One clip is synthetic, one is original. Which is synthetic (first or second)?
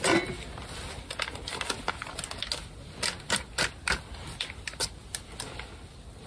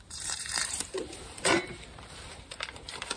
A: second